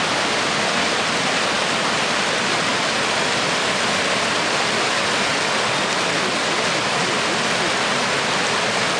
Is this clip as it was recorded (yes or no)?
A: yes